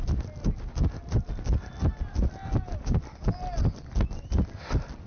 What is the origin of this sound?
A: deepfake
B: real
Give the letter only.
B